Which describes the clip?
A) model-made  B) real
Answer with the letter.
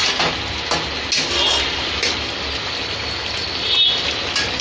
B